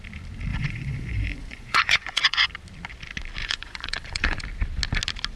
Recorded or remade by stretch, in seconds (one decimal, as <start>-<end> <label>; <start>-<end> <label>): 0.0-0.5 recorded; 0.5-2.5 remade; 2.5-3.4 recorded; 3.4-4.4 remade; 4.4-5.4 recorded